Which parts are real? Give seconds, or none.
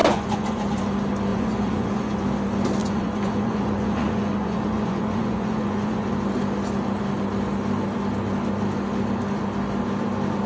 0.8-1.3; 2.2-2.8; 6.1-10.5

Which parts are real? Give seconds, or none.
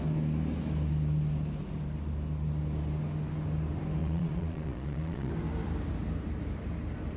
0.0-4.0; 5.3-7.2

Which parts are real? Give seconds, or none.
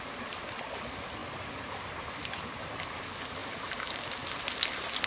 0.0-5.1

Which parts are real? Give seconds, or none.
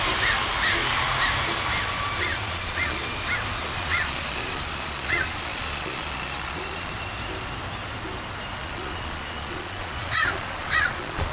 0.0-2.2; 3.0-3.6; 6.9-8.6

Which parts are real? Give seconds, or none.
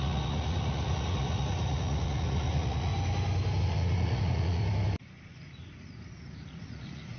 2.9-3.6; 4.6-5.4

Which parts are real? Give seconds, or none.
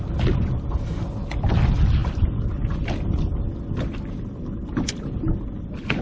0.0-6.0